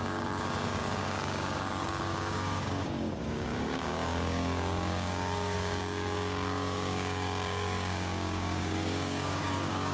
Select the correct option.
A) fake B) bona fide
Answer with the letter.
A